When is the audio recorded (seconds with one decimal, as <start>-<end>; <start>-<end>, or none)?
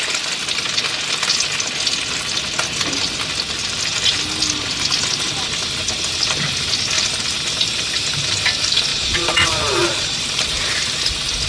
0.0-8.9; 10.2-11.5